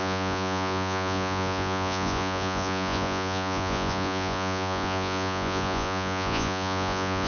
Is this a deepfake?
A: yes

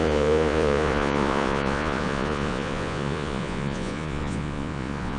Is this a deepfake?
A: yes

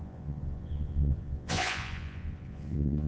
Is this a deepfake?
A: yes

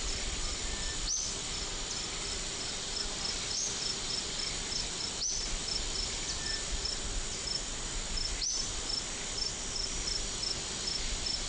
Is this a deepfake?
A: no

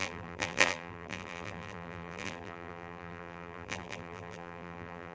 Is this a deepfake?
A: yes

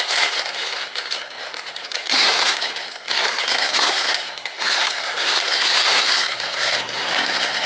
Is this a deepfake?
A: yes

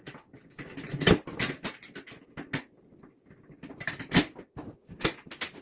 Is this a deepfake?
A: no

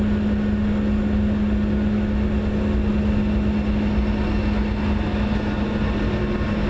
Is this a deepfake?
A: no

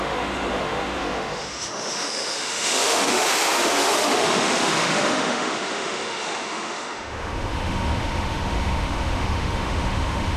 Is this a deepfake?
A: yes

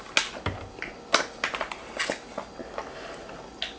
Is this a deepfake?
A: no